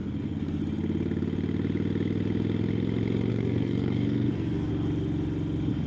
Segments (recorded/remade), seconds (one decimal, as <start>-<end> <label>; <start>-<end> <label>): 0.0-0.6 remade; 0.6-3.3 recorded; 3.3-4.7 remade; 4.7-5.9 recorded